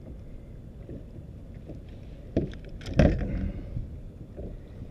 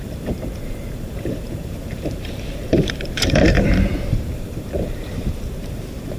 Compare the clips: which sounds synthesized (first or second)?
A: second